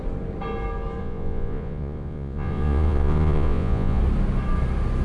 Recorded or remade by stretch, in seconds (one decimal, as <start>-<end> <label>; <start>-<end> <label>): 0.0-1.0 recorded; 1.0-4.0 remade; 4.0-5.0 recorded